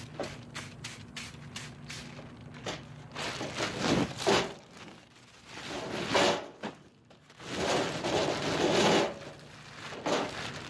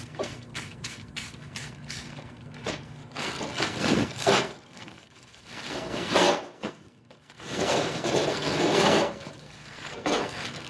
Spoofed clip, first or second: second